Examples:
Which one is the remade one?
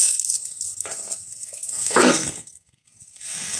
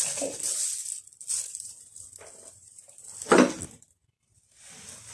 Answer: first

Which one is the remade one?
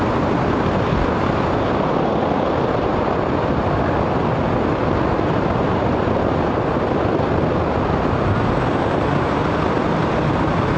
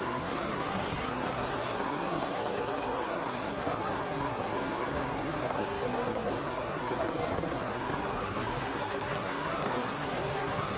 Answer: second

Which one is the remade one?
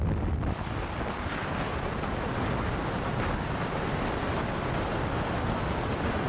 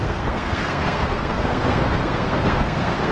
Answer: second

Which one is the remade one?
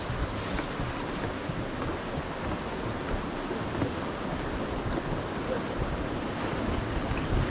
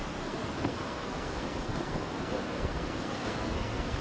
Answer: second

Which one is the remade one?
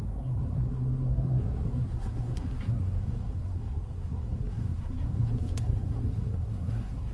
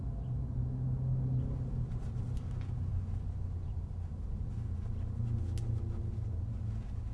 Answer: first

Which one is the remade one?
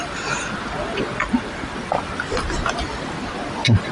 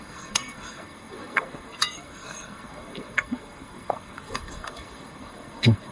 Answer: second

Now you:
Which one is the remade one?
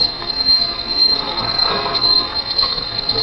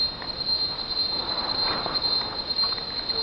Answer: first